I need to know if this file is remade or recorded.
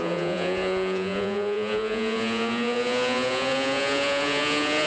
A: remade